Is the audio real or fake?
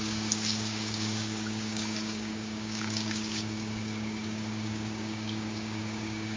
fake